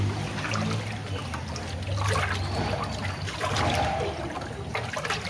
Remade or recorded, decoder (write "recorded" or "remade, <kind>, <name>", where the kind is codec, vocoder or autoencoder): recorded